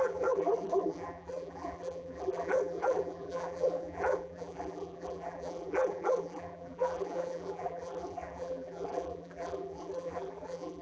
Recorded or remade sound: remade